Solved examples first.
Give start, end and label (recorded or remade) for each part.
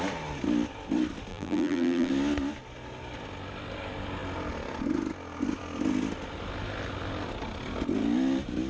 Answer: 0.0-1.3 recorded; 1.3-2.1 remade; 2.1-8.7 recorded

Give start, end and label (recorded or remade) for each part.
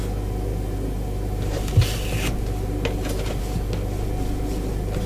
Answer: 0.0-5.1 recorded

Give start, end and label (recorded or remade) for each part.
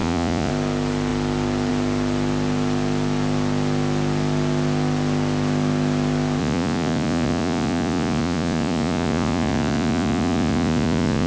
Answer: 0.0-0.5 remade; 0.5-6.4 recorded; 6.4-11.3 remade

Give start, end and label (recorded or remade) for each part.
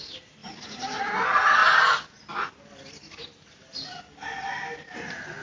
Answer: 0.0-5.4 recorded